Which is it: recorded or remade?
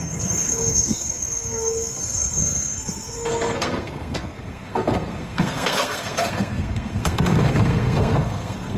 remade